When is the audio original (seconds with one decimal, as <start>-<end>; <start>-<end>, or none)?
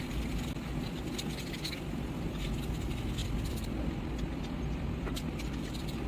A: 0.0-6.1